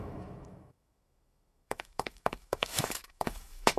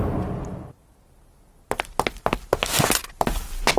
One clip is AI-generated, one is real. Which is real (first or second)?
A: second